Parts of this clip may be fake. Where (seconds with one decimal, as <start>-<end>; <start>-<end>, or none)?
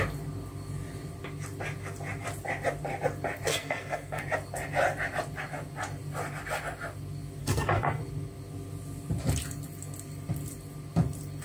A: 3.5-4.2; 7.4-8.0